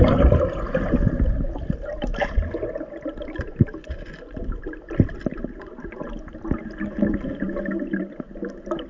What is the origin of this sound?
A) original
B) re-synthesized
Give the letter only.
A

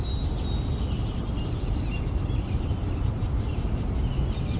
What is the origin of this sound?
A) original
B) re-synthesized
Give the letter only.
A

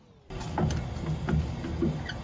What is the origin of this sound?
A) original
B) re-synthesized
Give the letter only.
A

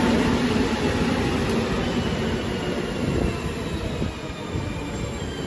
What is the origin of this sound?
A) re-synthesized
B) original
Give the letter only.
B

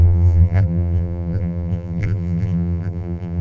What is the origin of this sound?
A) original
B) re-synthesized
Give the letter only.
B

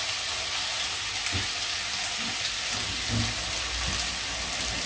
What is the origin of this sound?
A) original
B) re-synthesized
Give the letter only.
A